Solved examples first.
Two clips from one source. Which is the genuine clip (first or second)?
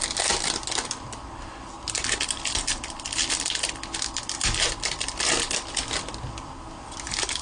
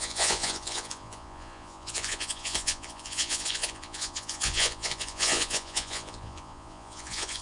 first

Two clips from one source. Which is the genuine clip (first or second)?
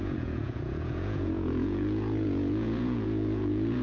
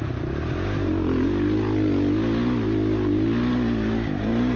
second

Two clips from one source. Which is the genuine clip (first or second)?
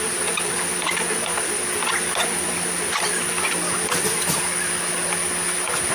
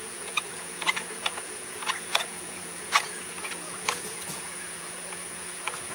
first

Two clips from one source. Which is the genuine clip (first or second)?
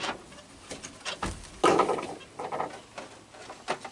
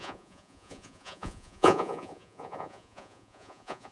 first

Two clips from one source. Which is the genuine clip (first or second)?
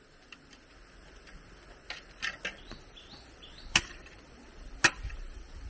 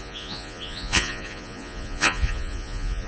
first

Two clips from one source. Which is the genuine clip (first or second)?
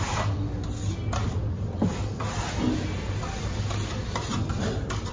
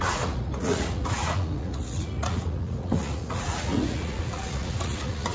first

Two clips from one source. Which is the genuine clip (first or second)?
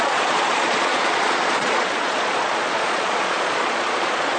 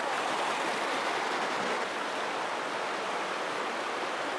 second